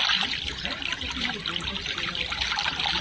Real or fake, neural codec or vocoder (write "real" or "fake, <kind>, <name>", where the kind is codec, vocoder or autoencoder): real